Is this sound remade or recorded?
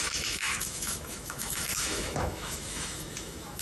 remade